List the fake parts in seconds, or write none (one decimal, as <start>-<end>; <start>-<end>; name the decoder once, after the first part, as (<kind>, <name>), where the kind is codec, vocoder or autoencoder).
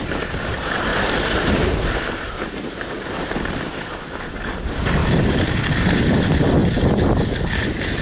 0.0-0.9 (vocoder, BigVGAN v2); 1.5-5.0; 5.7-6.6; 7.4-8.0